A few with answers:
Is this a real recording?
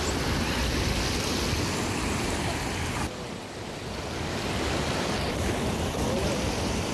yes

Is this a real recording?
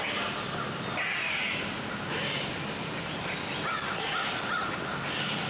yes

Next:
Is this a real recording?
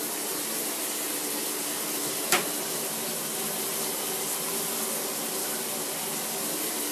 yes